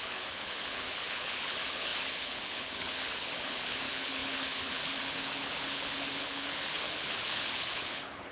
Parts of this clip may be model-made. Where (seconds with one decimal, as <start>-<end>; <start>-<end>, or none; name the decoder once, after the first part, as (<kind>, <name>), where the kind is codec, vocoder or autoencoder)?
0.0-8.3 (codec, HILCodec)